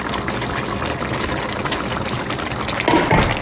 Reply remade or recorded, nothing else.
recorded